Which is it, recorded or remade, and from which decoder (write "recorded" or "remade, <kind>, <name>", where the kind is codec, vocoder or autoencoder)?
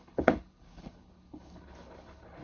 remade, codec, HILCodec